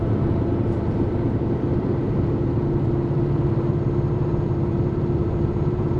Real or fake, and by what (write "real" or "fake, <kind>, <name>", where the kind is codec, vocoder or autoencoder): fake, vocoder, BigVGAN v2